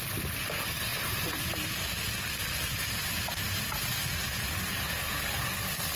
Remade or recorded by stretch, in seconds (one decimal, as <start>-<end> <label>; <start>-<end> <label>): 0.0-0.9 recorded; 0.9-1.5 remade; 1.5-2.8 recorded; 2.8-5.1 remade; 5.1-6.0 recorded